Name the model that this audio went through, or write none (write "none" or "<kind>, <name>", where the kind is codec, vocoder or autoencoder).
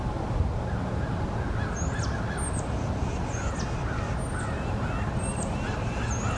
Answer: none